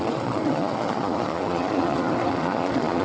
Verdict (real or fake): fake